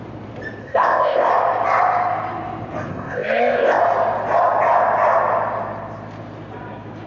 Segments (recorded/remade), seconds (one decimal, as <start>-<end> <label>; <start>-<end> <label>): 0.0-0.6 recorded; 0.6-1.3 remade; 1.3-2.9 recorded; 2.9-3.8 remade; 3.8-7.1 recorded